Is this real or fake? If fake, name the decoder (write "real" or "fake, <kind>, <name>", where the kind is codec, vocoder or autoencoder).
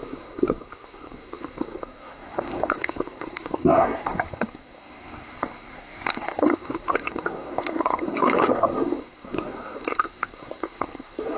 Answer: fake, codec, SNAC